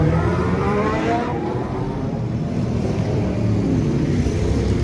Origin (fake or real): fake